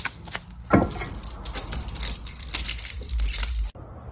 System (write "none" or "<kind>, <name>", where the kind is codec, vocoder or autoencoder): none